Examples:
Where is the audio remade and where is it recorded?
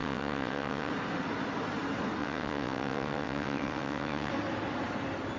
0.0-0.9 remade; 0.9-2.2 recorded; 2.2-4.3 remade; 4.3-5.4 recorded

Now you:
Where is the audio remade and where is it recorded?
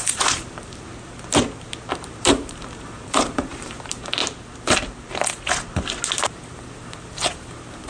0.0-0.9 remade; 0.9-1.9 recorded; 1.9-4.2 remade; 4.2-6.1 recorded; 6.1-7.9 remade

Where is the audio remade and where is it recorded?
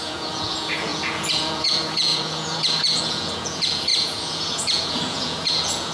0.0-5.9 remade